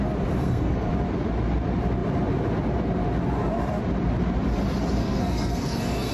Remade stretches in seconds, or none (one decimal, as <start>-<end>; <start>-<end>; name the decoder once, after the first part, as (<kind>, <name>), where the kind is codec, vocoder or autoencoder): 0.4-0.9 (codec, SNAC); 5.0-6.1